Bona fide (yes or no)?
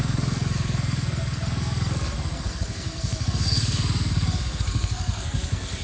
no